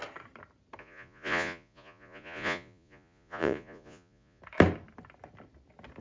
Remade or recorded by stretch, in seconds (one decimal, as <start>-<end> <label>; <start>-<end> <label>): 0.0-0.8 recorded; 0.8-4.4 remade; 4.4-6.0 recorded